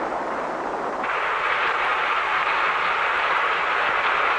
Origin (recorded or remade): remade